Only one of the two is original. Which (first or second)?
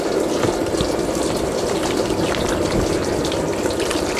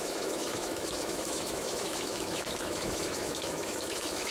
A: first